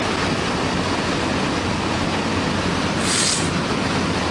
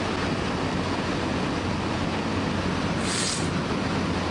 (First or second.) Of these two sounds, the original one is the second